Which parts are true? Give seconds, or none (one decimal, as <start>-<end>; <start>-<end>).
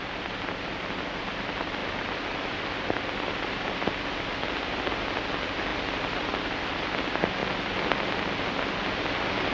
0.0-9.5